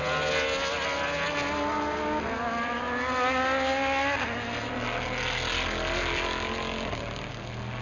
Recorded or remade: recorded